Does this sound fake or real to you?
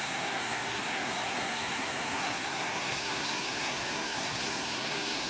fake